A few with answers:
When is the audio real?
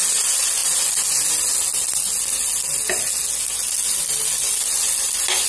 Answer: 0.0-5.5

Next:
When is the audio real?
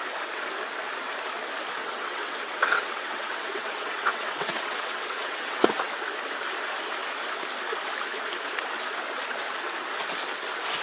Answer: 0.0-1.8; 5.9-10.8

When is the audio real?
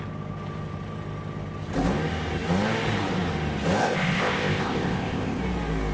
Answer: 0.0-3.8; 5.4-5.9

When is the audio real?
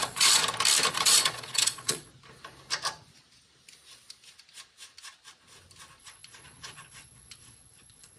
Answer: 0.4-0.9; 2.1-6.0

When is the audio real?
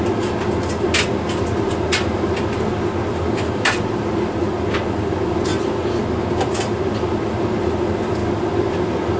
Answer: 0.0-9.2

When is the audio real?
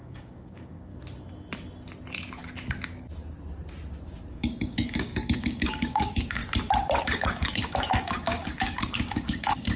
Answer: 0.9-4.3; 6.4-7.0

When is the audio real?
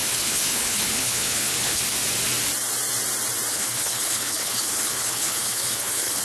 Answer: 1.8-3.5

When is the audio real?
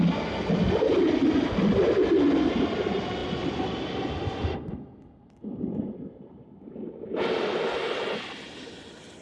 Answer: 0.0-9.2